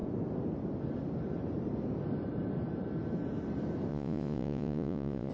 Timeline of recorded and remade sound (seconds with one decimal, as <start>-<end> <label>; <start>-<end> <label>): 0.0-3.9 recorded; 3.9-5.3 remade